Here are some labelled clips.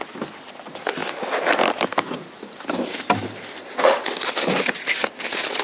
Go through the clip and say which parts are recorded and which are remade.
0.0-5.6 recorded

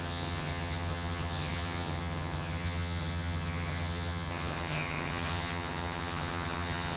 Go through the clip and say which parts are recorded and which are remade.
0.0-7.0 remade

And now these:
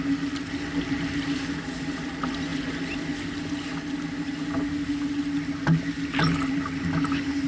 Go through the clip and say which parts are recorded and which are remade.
0.0-7.5 recorded